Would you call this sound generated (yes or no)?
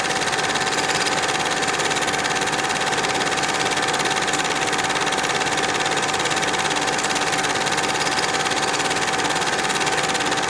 no